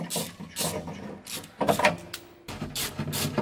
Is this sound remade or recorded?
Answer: recorded